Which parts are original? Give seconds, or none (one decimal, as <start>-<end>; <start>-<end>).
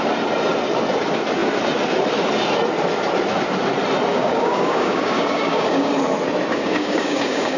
0.0-4.1; 5.9-6.5